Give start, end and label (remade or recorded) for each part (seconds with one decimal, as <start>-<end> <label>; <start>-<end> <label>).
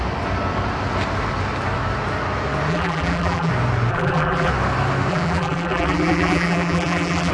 0.0-2.7 recorded; 2.7-3.5 remade; 3.5-3.9 recorded; 3.9-4.5 remade; 4.5-5.1 recorded; 5.1-7.3 remade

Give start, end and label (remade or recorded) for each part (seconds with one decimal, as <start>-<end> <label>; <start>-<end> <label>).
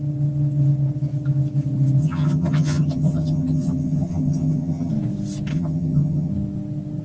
0.0-2.0 recorded; 2.0-4.9 remade; 4.9-5.5 recorded; 5.5-6.3 remade; 6.3-7.0 recorded